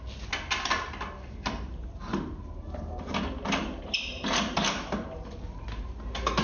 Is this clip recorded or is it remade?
recorded